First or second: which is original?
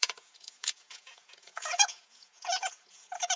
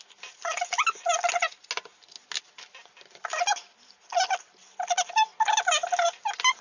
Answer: second